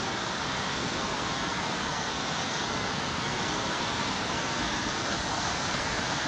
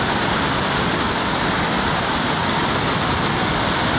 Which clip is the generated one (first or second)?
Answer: first